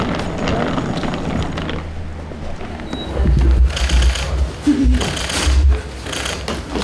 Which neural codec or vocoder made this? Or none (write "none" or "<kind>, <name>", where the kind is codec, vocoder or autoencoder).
none